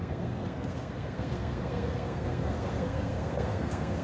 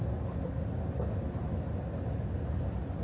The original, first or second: second